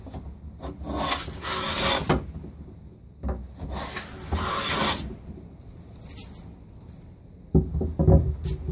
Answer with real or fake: real